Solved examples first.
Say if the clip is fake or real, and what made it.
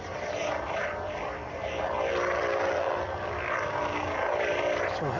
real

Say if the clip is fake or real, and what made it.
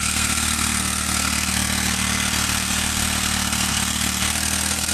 fake, codec, SNAC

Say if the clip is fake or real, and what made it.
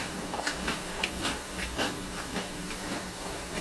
fake, codec, DAC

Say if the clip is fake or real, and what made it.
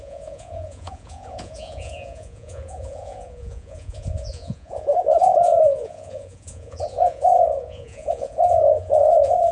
fake, vocoder, Vocos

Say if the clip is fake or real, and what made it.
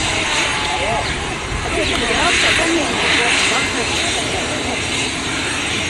fake, vocoder, BigVGAN v2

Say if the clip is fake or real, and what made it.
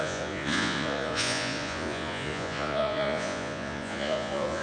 fake, vocoder, Vocos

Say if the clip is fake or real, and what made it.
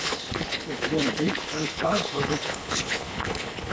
fake, codec, HILCodec